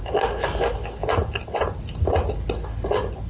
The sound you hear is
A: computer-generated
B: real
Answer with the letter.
B